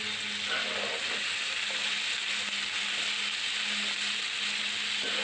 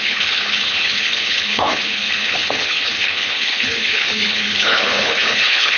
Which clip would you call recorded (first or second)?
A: first